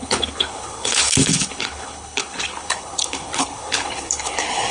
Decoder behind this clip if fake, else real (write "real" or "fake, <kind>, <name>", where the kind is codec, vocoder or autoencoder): fake, codec, HILCodec